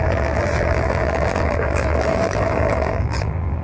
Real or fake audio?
fake